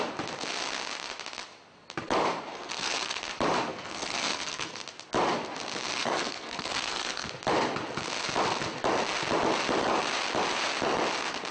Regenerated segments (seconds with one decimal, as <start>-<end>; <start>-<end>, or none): 2.5-3.2; 3.7-4.8; 5.9-7.3